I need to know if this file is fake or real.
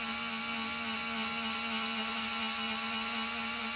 real